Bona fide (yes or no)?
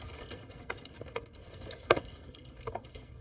no